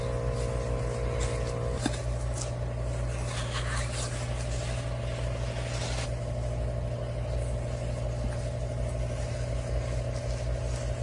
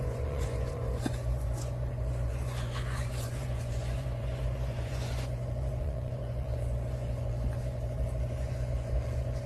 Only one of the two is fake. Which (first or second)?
second